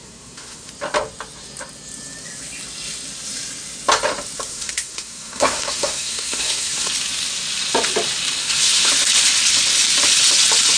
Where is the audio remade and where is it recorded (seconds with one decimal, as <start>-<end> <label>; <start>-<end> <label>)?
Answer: 0.0-0.7 remade; 0.7-4.5 recorded; 4.5-6.9 remade; 6.9-8.4 recorded; 8.4-8.9 remade; 8.9-10.8 recorded